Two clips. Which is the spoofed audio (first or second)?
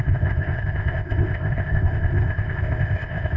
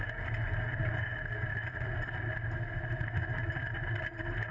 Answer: first